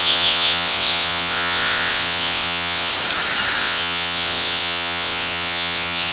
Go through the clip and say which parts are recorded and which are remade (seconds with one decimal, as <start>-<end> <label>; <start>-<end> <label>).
0.0-2.9 remade; 2.9-3.6 recorded; 3.6-6.1 remade